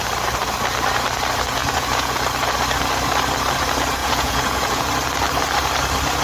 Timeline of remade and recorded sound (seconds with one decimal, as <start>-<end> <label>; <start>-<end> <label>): 0.0-1.6 recorded; 1.6-2.2 remade; 2.2-4.0 recorded; 4.0-4.8 remade; 4.8-6.2 recorded